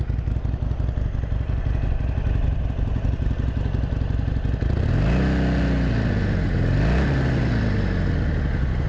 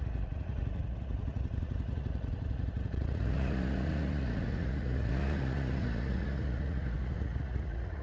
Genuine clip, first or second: first